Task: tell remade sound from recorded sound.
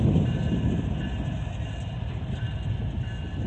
recorded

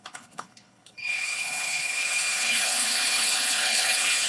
remade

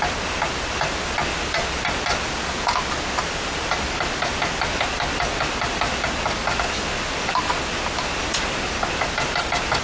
recorded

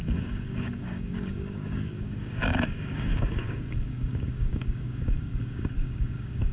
remade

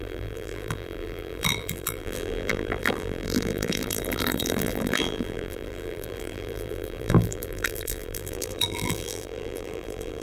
remade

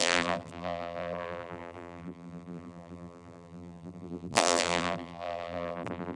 remade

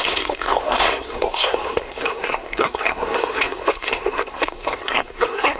remade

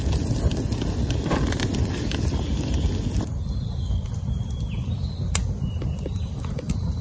recorded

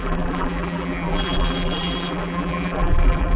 remade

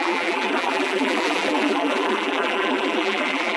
remade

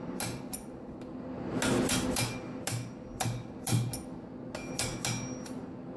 recorded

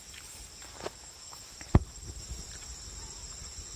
remade